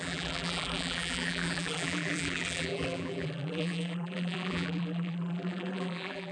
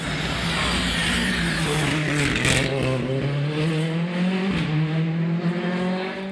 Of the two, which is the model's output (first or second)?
first